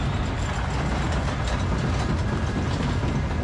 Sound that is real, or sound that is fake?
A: real